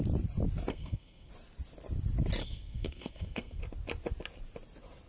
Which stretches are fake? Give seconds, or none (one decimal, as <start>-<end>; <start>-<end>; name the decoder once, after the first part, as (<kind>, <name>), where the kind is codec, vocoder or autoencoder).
0.7-1.3 (codec, SNAC); 2.4-3.6